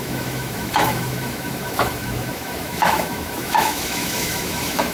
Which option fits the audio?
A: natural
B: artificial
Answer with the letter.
B